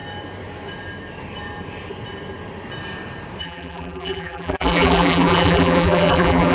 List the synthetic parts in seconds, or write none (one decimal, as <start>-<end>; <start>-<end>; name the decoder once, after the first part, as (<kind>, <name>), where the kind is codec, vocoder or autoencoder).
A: 3.4-6.5 (vocoder, BigVGAN v2)